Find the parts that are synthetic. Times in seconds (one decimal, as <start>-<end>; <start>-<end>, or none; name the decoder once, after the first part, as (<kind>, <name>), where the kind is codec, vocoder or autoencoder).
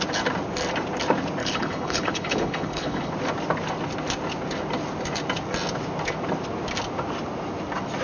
1.4-3.1 (codec, HILCodec)